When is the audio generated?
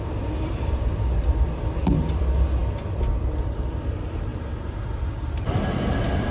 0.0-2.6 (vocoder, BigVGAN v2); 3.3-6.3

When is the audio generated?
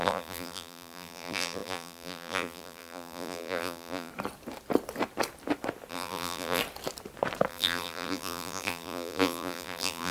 0.0-4.1 (vocoder, BigVGAN v2); 5.9-6.6; 7.5-10.1